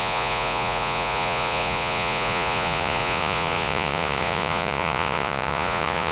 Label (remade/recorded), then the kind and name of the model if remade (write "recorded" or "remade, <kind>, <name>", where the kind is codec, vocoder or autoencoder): remade, vocoder, Vocos